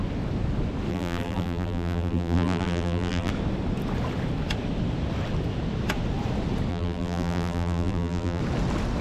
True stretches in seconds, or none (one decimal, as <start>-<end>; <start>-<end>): 0.0-0.9; 3.3-6.7; 8.4-9.0